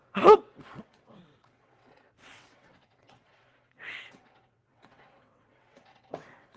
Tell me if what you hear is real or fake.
fake